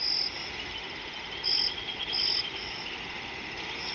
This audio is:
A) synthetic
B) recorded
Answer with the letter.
B